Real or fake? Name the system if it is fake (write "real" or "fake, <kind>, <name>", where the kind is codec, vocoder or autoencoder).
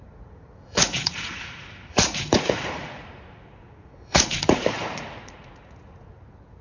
fake, vocoder, Vocos